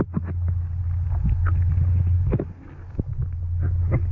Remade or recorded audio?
recorded